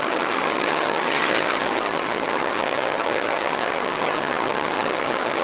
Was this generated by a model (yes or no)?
yes